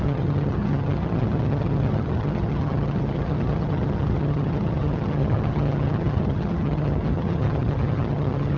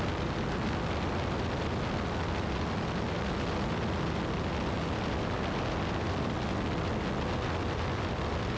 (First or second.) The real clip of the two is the second